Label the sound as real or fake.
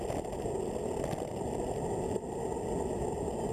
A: real